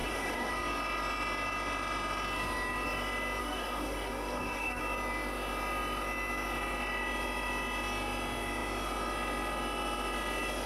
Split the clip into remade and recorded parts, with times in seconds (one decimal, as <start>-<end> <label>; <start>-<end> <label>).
0.0-0.5 remade; 0.5-3.4 recorded; 3.4-4.8 remade; 4.8-10.7 recorded